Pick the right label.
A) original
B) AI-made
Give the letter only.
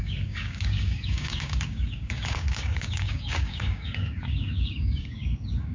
B